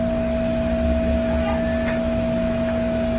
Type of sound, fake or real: real